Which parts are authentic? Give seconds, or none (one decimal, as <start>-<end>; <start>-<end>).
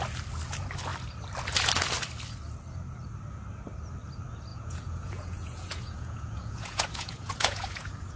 0.0-4.5